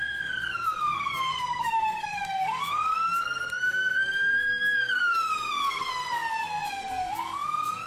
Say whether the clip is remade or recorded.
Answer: remade